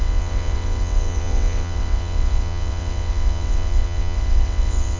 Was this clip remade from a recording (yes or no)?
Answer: yes